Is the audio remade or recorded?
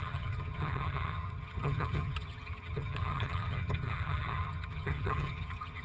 remade